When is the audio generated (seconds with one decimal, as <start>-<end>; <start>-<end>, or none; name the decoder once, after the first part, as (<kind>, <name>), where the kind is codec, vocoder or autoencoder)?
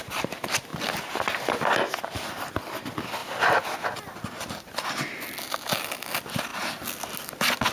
0.7-2.5 (vocoder, BigVGAN v2); 3.2-4.8